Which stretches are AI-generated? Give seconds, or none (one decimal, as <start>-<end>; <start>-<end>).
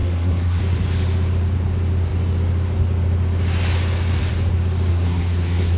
0.0-0.6; 4.9-5.8